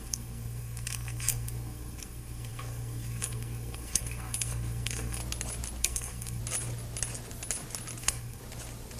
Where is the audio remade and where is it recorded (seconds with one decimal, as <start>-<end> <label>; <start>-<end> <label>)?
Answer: 0.0-5.2 remade; 5.2-5.8 recorded; 5.8-6.4 remade; 6.4-8.0 recorded; 8.0-8.4 remade; 8.4-9.0 recorded